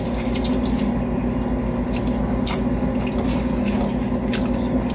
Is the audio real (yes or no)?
yes